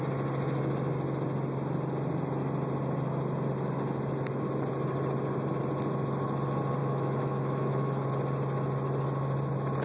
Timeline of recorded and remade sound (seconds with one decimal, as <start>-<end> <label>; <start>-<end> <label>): 0.0-6.8 recorded; 6.8-8.1 remade; 8.1-9.8 recorded